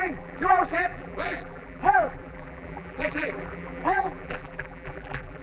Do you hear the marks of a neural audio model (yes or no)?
yes